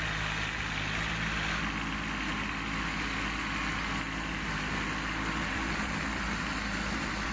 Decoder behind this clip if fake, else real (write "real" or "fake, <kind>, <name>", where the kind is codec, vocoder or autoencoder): real